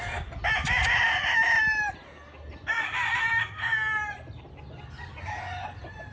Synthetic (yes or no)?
no